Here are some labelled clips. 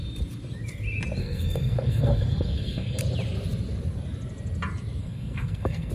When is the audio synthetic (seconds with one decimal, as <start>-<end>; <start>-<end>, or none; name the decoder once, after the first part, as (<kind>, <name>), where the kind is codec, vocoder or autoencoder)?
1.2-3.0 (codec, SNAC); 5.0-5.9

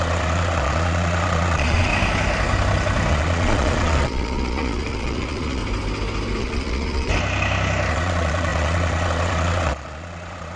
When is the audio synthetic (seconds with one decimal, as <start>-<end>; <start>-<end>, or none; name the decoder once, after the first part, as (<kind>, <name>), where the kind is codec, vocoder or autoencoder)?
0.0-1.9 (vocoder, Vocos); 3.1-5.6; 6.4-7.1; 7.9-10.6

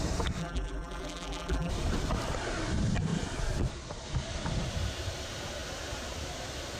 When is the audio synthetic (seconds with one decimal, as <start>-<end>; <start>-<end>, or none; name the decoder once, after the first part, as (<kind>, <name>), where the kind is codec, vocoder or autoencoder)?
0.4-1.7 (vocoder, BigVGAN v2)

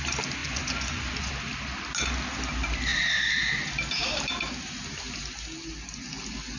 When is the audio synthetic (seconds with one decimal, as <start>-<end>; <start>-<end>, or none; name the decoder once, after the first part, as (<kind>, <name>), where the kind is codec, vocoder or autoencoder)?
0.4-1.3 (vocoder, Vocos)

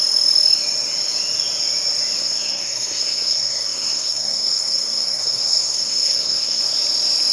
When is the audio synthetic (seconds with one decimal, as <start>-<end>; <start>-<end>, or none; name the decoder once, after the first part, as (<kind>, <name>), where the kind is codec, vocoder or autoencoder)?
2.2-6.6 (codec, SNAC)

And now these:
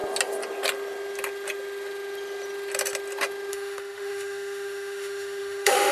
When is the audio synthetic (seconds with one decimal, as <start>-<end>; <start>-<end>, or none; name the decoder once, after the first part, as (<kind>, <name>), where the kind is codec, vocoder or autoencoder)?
3.5-5.9 (autoencoder, DAC-VAE)

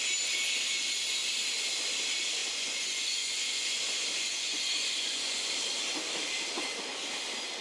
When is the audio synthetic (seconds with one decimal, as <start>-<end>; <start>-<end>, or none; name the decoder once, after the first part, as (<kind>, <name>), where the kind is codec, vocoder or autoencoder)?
2.4-5.5 (vocoder, Vocos)